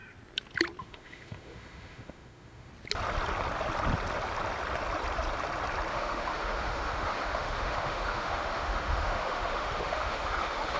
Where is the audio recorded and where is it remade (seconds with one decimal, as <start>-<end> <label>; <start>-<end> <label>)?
0.0-0.8 recorded; 0.8-2.7 remade; 2.7-5.9 recorded; 5.9-10.8 remade